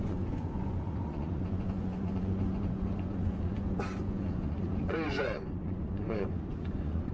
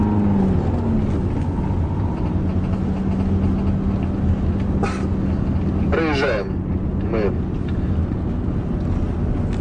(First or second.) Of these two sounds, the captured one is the second